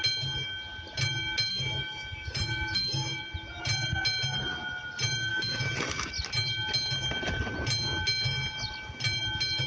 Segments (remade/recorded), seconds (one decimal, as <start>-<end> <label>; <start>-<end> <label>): 0.0-1.5 recorded; 1.5-3.2 remade; 3.2-5.3 recorded; 5.3-6.1 remade; 6.1-9.7 recorded